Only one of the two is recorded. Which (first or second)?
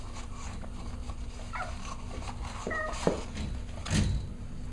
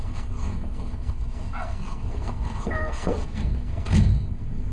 first